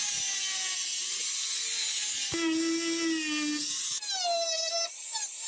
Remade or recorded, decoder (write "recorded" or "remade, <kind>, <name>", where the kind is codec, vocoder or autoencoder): recorded